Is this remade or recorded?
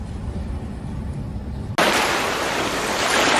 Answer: recorded